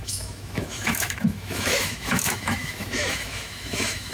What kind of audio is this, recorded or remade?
remade